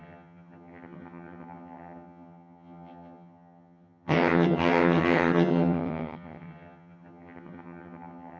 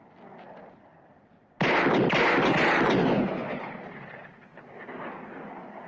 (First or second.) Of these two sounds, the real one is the second